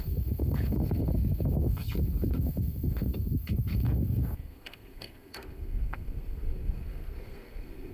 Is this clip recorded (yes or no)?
no